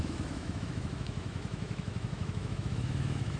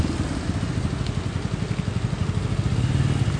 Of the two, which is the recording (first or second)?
second